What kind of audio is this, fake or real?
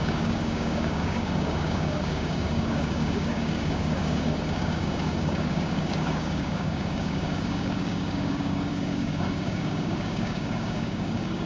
fake